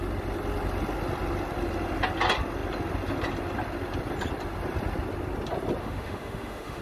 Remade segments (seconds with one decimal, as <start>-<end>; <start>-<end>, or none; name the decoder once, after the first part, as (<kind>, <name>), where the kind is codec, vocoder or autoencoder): 5.8-6.8 (autoencoder, DAC-VAE)